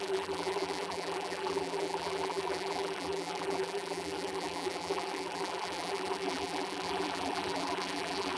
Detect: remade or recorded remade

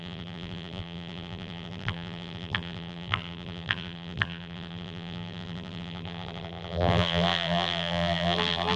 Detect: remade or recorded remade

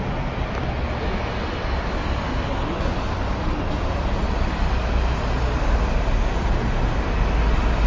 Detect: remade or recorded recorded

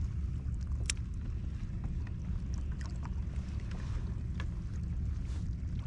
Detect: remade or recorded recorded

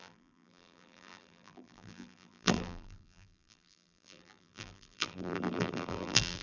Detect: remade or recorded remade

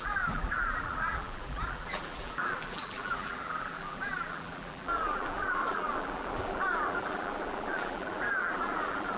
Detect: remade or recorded remade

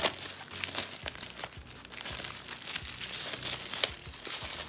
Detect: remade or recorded recorded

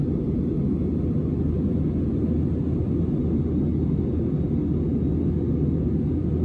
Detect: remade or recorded recorded